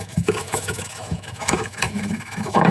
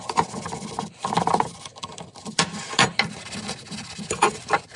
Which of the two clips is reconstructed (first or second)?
first